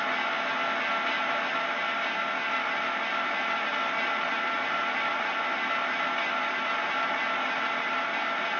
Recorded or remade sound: recorded